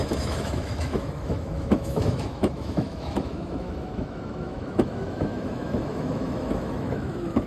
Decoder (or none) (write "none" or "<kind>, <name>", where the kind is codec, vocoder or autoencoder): autoencoder, DAC-VAE